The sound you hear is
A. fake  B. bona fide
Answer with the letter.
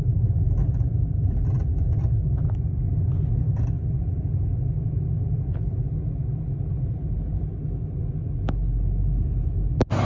B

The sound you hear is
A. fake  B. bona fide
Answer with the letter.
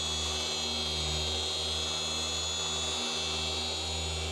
B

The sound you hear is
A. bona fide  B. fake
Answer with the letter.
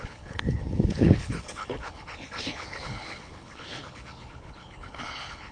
B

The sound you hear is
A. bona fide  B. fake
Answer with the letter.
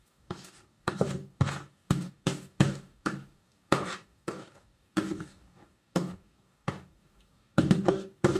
B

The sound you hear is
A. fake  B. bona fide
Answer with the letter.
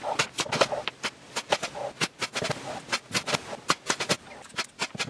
B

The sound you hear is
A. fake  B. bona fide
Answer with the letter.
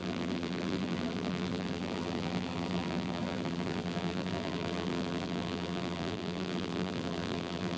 A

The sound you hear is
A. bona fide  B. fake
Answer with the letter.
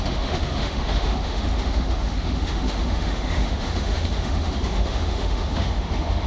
B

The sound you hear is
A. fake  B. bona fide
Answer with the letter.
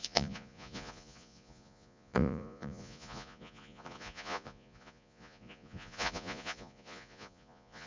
A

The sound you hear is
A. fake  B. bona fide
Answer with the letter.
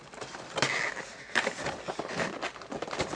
B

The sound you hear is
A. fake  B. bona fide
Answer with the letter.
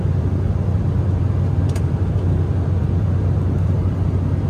A